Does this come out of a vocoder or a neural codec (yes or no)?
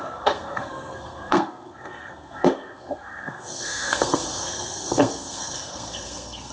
yes